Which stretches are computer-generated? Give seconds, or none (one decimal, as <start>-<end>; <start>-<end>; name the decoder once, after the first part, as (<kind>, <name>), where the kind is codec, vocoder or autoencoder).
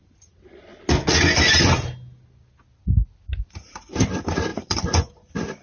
3.4-5.6 (vocoder, BigVGAN v2)